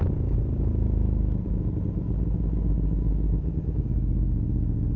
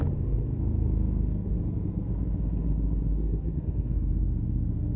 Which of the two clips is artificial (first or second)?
second